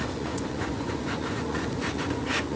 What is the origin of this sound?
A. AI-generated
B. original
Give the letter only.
A